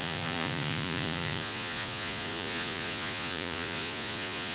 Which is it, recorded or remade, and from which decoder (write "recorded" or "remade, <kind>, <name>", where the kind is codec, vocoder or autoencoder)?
remade, vocoder, Vocos